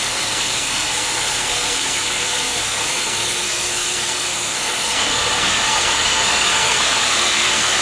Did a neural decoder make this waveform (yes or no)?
yes